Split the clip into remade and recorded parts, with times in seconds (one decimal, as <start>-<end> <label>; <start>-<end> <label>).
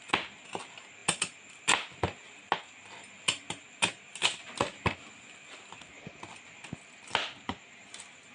0.0-8.3 recorded